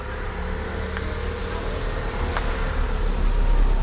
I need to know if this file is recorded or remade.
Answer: recorded